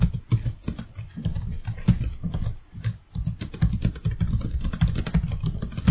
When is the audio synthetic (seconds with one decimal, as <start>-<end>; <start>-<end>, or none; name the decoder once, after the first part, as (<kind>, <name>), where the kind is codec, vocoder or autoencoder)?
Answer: none